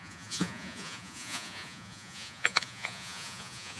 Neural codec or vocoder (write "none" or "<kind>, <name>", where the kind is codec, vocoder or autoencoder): vocoder, Vocos